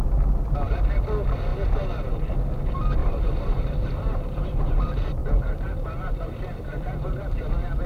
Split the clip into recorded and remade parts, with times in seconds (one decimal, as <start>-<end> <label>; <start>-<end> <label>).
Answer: 0.0-3.0 recorded; 3.0-4.6 remade; 4.6-5.2 recorded; 5.2-7.5 remade; 7.5-7.9 recorded